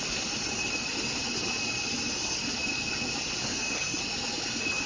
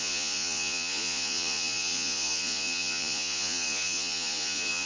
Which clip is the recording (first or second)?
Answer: first